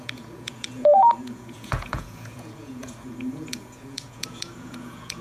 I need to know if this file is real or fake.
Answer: fake